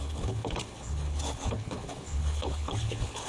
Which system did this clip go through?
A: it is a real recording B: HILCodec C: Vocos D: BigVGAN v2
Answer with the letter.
B